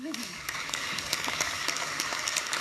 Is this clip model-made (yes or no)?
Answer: yes